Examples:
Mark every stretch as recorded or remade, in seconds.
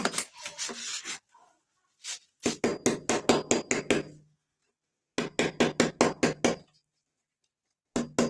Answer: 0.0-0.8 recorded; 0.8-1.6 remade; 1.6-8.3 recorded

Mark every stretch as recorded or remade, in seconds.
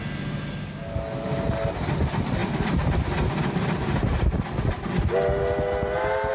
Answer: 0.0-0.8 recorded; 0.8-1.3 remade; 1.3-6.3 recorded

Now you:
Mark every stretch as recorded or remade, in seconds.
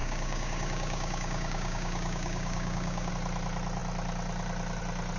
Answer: 0.0-3.1 remade; 3.1-5.2 recorded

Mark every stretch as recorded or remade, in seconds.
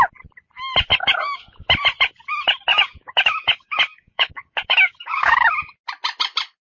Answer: 0.0-0.9 recorded; 0.9-1.7 remade; 1.7-2.7 recorded; 2.7-5.6 remade; 5.6-6.7 recorded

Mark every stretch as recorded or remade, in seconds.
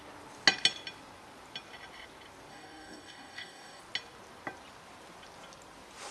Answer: 0.0-2.5 recorded; 2.5-3.8 remade; 3.8-6.1 recorded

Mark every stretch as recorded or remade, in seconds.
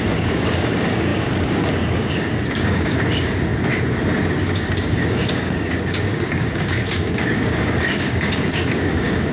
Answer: 0.0-3.5 remade; 3.5-4.4 recorded; 4.4-9.3 remade